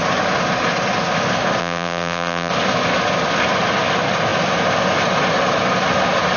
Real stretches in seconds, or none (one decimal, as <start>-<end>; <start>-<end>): 0.0-1.6; 2.5-6.4